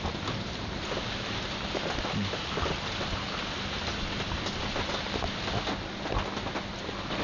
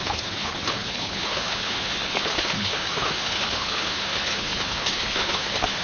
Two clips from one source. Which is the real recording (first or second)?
first